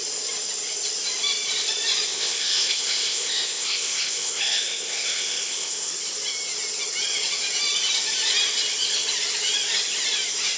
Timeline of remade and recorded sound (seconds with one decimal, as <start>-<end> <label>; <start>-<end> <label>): 0.0-2.1 recorded; 2.1-5.9 remade; 5.9-10.6 recorded